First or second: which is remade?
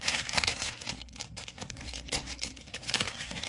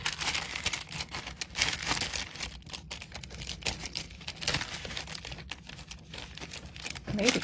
first